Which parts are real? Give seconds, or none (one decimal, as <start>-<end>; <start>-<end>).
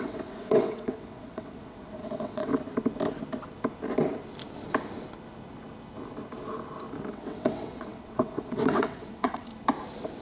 2.5-7.1; 9.5-10.2